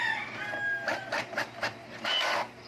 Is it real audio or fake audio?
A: real